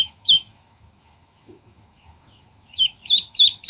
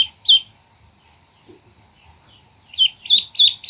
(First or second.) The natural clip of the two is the second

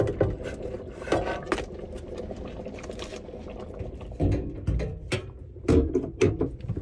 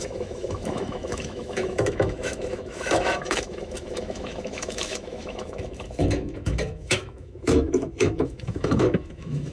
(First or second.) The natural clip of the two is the first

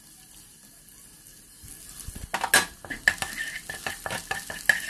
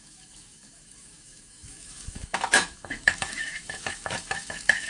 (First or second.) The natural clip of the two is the first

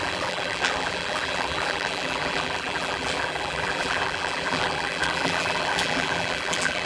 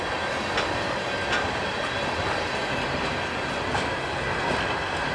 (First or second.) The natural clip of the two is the second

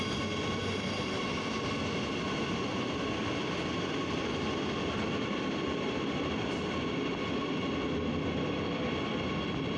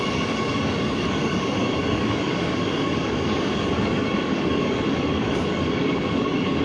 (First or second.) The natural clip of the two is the first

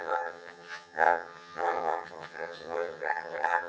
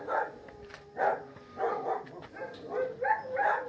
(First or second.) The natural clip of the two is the second